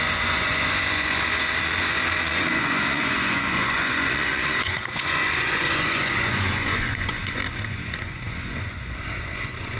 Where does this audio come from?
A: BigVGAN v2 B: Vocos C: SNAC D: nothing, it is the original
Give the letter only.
B